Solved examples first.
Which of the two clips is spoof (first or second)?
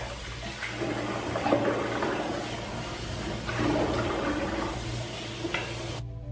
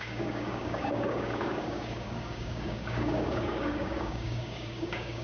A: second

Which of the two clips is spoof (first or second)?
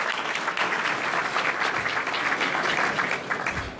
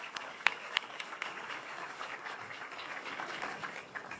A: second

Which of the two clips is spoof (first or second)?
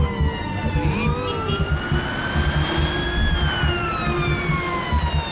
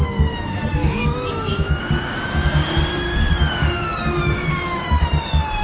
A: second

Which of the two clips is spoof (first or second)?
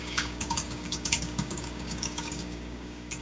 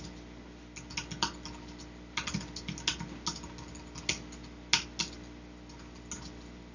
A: first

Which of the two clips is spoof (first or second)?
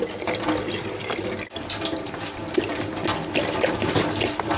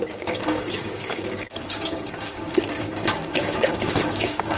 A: second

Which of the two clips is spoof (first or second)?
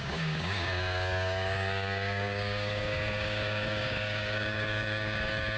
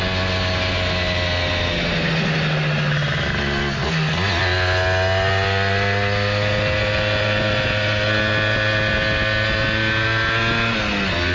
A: first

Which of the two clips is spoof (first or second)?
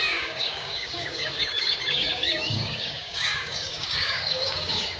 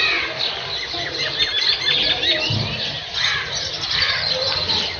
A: first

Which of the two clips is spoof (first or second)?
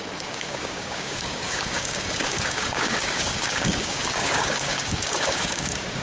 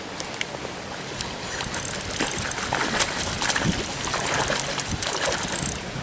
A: first